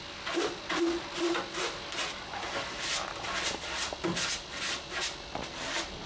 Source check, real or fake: real